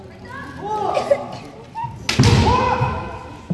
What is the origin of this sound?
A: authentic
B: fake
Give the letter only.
A